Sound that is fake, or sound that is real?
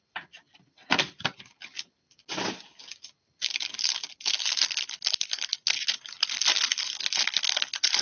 real